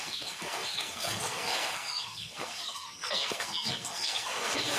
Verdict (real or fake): fake